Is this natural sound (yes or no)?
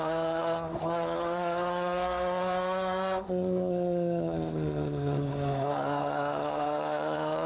no